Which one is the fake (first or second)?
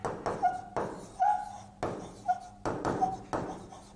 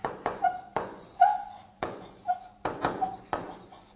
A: second